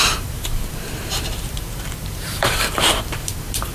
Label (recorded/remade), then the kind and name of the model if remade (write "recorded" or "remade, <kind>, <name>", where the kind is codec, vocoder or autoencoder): remade, vocoder, BigVGAN v2